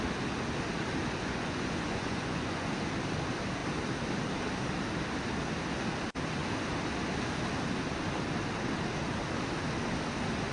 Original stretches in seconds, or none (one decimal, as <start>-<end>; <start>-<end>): 0.0-1.2; 2.7-10.5